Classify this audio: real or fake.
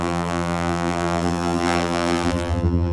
fake